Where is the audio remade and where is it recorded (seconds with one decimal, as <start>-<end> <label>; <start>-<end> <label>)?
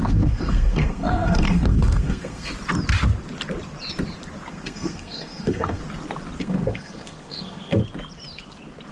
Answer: 0.0-2.5 remade; 2.5-4.5 recorded; 4.5-5.8 remade; 5.8-6.4 recorded; 6.4-7.8 remade; 7.8-8.9 recorded